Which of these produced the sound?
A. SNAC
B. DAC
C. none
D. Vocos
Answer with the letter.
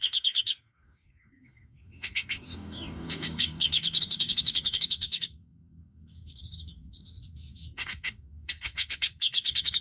B